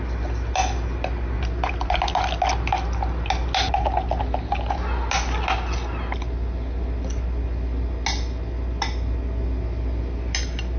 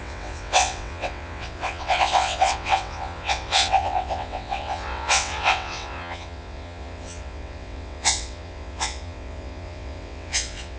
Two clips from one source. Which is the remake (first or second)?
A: second